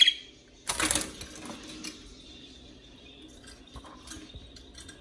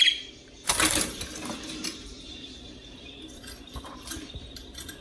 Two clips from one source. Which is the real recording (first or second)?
first